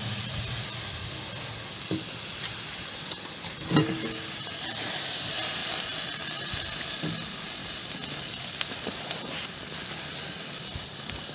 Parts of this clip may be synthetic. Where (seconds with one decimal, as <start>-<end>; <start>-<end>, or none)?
3.8-4.8; 5.6-6.2